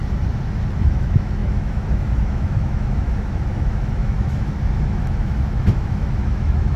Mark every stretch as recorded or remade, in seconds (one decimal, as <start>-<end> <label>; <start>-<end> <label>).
0.0-0.8 recorded; 0.8-6.8 remade